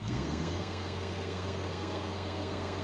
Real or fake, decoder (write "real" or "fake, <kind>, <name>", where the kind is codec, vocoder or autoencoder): fake, codec, SNAC